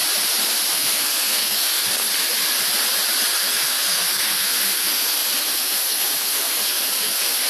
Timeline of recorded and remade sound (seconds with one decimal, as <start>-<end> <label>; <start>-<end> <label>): 0.0-0.7 recorded; 0.7-2.0 remade; 2.0-3.4 recorded; 3.4-7.5 remade